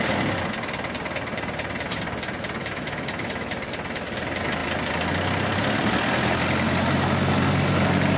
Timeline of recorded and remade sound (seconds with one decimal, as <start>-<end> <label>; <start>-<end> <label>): 0.0-2.6 recorded; 2.6-3.5 remade; 3.5-8.2 recorded